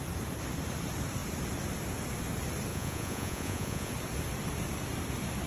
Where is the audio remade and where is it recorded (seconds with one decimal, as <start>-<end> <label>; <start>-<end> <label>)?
0.0-2.7 recorded; 2.7-3.9 remade; 3.9-5.5 recorded